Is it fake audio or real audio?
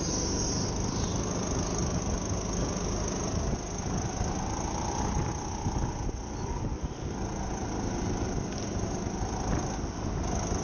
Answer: real